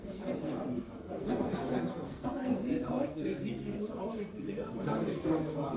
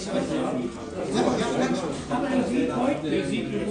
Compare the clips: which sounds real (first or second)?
second